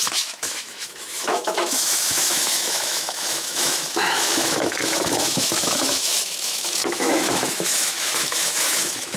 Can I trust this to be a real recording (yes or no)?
no